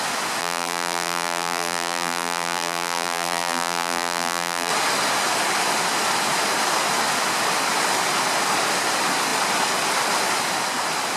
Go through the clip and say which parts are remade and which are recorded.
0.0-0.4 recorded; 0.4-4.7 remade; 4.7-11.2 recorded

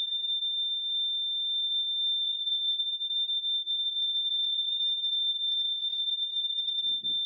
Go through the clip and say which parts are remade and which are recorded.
0.0-2.2 recorded; 2.2-2.8 remade; 2.8-4.3 recorded; 4.3-4.8 remade; 4.8-7.3 recorded